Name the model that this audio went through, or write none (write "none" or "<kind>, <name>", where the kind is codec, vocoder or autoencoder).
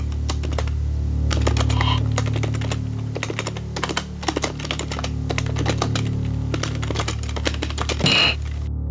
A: none